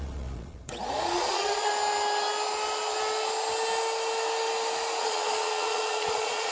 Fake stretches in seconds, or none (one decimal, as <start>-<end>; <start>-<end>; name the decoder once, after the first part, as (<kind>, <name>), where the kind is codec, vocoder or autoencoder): 0.0-1.7 (vocoder, Vocos); 5.0-6.5